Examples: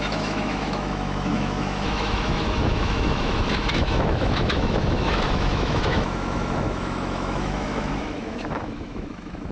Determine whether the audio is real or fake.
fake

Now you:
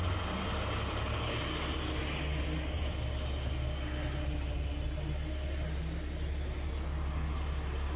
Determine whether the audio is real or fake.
real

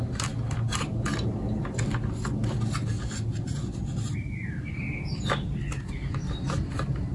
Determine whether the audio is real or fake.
real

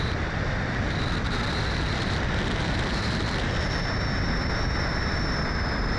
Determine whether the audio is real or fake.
real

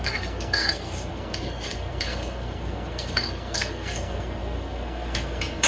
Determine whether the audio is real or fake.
fake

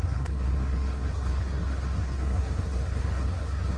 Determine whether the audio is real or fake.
fake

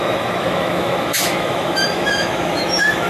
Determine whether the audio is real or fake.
fake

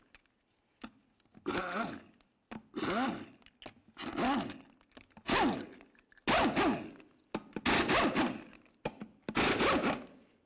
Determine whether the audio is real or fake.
real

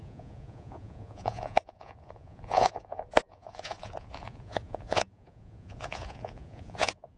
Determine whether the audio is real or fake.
fake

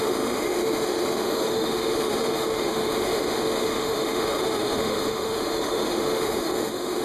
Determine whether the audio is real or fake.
fake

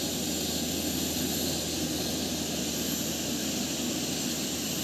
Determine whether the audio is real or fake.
real